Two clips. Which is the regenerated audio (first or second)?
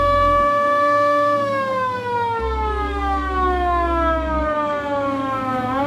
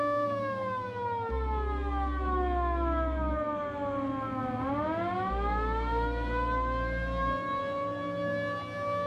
first